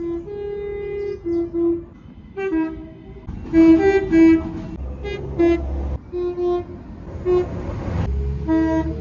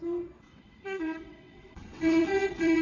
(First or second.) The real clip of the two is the first